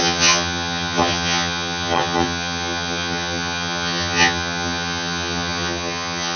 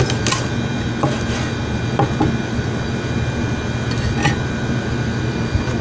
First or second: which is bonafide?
second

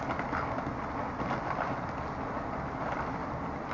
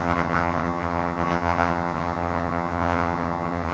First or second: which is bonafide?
first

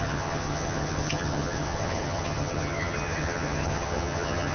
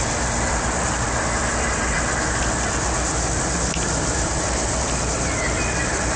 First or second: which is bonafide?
second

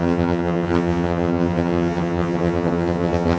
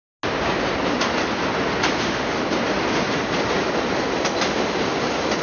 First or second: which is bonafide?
second